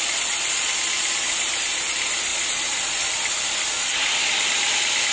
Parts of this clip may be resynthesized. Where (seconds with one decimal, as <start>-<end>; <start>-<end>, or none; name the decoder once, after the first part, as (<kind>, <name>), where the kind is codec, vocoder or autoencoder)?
none